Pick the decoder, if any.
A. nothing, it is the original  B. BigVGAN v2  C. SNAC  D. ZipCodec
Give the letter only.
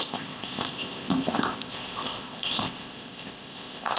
D